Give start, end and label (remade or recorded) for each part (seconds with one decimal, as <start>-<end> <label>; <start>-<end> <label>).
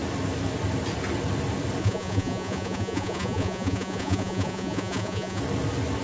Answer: 0.0-1.8 recorded; 1.8-5.4 remade; 5.4-6.0 recorded